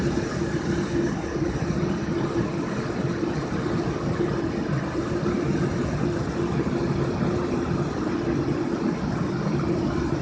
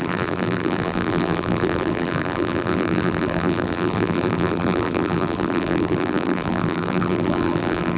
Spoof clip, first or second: second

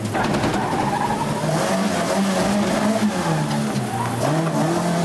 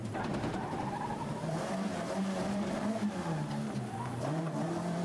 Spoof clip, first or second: second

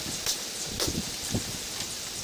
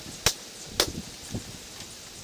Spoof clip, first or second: first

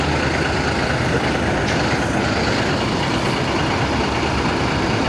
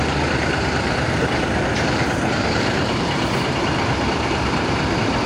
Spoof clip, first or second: second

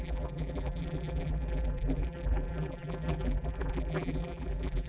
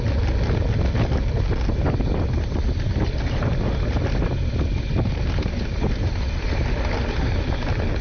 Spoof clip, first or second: first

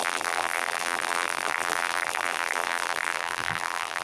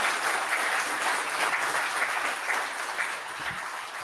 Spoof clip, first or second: first